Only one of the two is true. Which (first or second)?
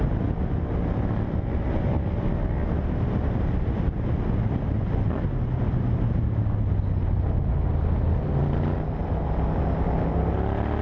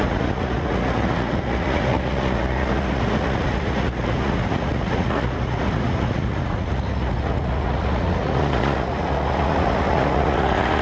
first